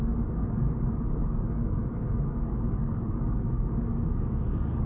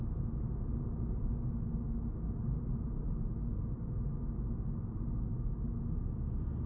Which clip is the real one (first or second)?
second